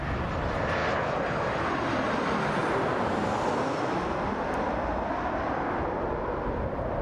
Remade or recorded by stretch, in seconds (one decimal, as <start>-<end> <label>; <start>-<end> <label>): 0.0-7.0 recorded